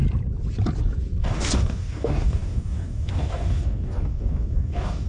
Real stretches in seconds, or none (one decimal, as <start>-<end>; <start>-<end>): 0.0-1.2